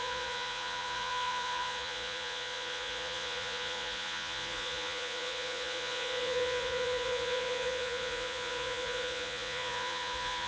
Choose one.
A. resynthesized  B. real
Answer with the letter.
A